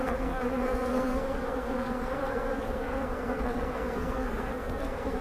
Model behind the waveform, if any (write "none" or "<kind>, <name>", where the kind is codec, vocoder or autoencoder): codec, SNAC